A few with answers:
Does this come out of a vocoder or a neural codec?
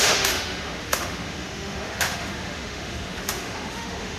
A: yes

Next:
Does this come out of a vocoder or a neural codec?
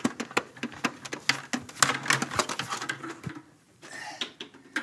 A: no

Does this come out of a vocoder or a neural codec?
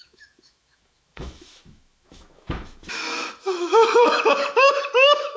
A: yes